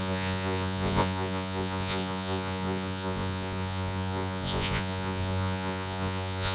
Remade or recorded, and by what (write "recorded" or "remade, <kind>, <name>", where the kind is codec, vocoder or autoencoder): remade, vocoder, Vocos